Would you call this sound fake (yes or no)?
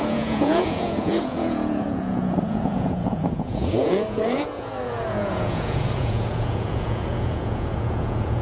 yes